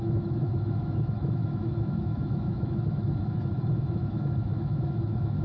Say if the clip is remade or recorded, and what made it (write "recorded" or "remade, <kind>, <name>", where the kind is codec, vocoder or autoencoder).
remade, autoencoder, DAC-VAE